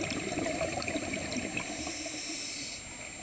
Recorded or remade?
recorded